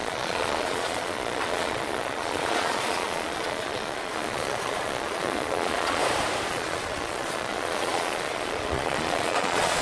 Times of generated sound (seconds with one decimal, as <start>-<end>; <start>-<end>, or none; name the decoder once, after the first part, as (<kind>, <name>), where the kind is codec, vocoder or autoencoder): 0.0-6.0 (vocoder, Vocos); 6.5-9.8